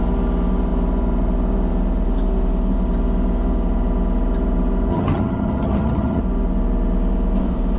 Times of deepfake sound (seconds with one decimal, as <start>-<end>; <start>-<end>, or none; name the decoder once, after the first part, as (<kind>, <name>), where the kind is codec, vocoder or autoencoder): 4.9-6.2 (vocoder, HiFi-GAN)

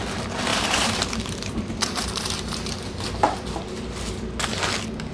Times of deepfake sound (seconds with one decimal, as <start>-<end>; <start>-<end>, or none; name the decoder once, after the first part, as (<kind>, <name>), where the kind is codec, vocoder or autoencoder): 0.5-2.7 (vocoder, BigVGAN v2)